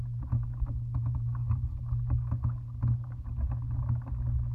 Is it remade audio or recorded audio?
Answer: recorded